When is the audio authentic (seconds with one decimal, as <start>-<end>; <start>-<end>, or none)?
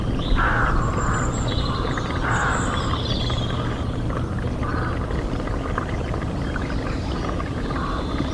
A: 0.0-8.3